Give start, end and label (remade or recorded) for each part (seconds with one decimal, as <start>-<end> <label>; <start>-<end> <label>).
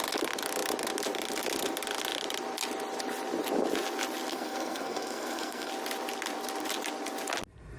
0.0-4.3 recorded; 4.3-5.7 remade; 5.7-7.8 recorded